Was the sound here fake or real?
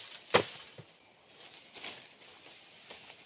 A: real